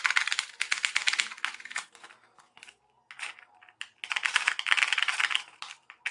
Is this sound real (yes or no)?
yes